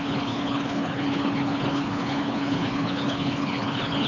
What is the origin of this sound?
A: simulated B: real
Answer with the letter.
A